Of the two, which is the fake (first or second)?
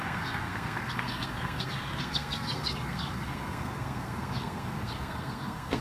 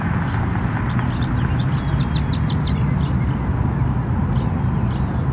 first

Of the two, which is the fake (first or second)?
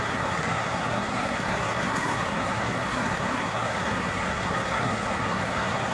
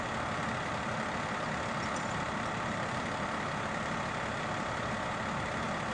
first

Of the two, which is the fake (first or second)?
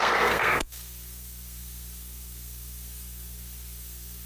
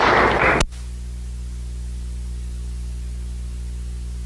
first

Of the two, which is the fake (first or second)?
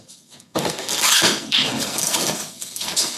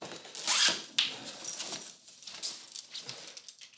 first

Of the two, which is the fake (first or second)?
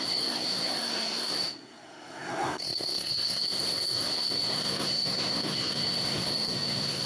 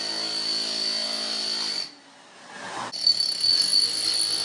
first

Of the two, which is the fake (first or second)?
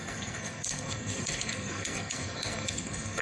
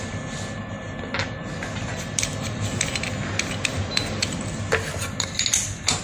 first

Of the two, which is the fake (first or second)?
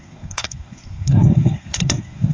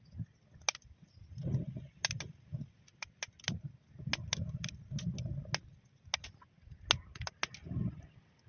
first